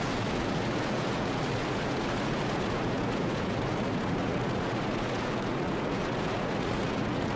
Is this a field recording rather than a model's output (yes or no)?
no